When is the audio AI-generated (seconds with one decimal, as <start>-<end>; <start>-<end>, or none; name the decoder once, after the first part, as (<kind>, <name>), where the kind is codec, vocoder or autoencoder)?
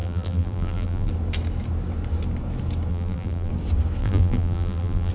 0.0-1.1 (vocoder, BigVGAN v2); 2.9-3.5; 4.0-5.1